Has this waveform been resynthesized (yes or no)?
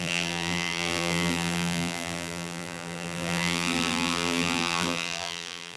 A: yes